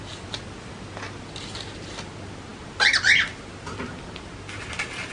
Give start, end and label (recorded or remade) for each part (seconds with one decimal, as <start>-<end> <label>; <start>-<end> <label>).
0.0-5.1 recorded